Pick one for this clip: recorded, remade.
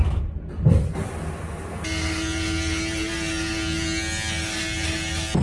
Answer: recorded